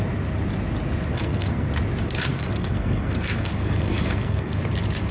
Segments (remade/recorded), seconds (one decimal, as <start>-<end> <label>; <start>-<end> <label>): 0.0-1.1 recorded; 1.1-1.7 remade; 1.7-2.3 recorded; 2.3-4.6 remade; 4.6-5.1 recorded